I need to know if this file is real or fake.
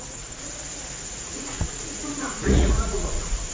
fake